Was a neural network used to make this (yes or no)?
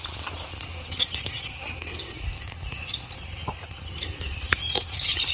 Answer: no